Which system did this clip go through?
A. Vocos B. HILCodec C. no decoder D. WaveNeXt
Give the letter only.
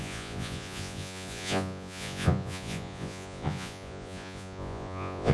A